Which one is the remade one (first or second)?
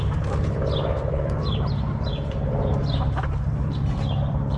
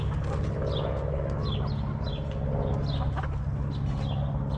first